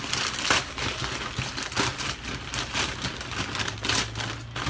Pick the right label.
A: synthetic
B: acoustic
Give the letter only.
B